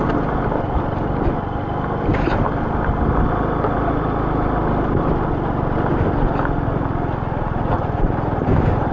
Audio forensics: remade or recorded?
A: recorded